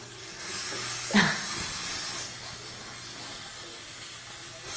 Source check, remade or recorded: recorded